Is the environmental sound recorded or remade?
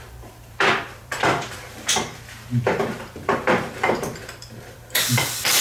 remade